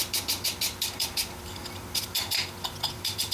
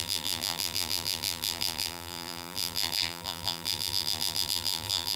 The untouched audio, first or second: first